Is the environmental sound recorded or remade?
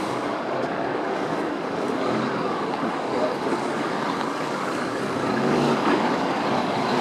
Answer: remade